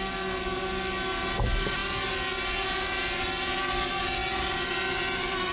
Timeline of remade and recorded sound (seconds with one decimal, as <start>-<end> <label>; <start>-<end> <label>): 0.0-5.5 recorded

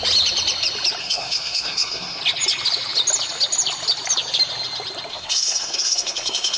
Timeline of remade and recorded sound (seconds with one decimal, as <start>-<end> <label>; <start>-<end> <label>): 0.0-1.0 recorded; 1.0-2.2 remade; 2.2-5.1 recorded; 5.1-6.6 remade

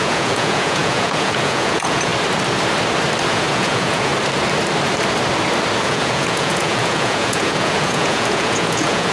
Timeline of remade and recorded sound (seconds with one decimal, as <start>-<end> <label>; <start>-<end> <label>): 0.0-2.1 remade; 2.1-3.3 recorded; 3.3-4.1 remade; 4.1-5.8 recorded; 5.8-9.1 remade

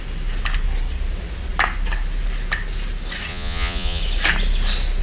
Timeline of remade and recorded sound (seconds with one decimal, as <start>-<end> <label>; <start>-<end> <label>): 0.0-3.3 recorded; 3.3-4.0 remade; 4.0-5.0 recorded

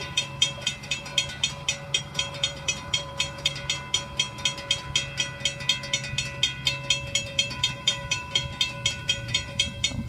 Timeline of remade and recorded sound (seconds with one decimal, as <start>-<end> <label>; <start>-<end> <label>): 0.0-1.1 remade; 1.1-2.0 recorded; 2.0-3.5 remade; 3.5-7.2 recorded; 7.2-8.4 remade; 8.4-9.0 recorded; 9.0-10.1 remade